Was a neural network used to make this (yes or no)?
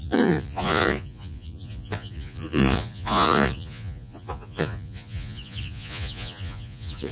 yes